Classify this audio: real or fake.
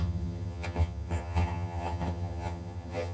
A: fake